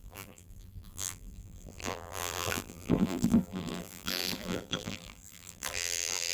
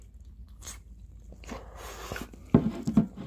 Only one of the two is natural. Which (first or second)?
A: second